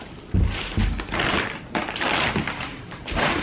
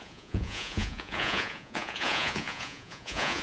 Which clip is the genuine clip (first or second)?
first